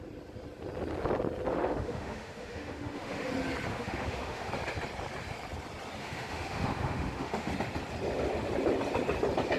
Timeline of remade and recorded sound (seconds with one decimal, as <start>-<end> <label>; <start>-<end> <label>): 0.0-1.5 recorded; 1.5-3.3 remade; 3.3-3.7 recorded; 3.7-4.5 remade; 4.5-6.0 recorded; 6.0-7.5 remade; 7.5-9.6 recorded